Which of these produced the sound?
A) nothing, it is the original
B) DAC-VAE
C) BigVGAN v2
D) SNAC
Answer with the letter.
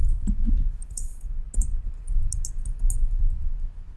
A